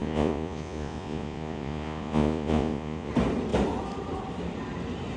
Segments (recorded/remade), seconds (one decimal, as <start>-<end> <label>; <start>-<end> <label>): 0.0-3.1 remade; 3.1-5.2 recorded